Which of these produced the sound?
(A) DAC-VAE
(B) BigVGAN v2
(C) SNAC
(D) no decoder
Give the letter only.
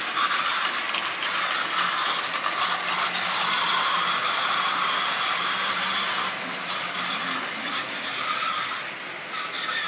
D